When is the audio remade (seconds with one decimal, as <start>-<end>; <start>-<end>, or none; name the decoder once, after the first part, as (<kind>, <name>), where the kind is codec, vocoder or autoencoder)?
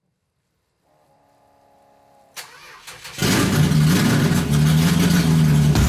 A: none